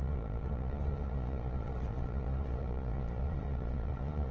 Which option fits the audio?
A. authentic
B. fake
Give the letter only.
B